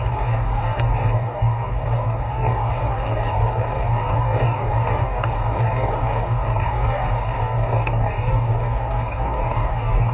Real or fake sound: fake